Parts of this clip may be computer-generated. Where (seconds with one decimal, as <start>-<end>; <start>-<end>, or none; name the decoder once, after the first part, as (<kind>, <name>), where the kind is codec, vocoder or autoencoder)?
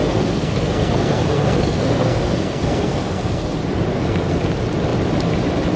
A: 0.0-3.5 (codec, SNAC); 3.9-4.4